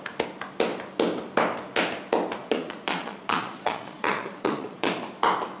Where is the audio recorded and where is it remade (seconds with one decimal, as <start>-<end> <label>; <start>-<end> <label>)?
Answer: 0.0-2.4 recorded; 2.4-4.9 remade; 4.9-5.6 recorded